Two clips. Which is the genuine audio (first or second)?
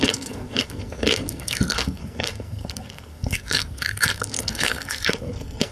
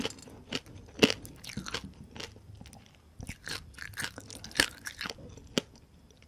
second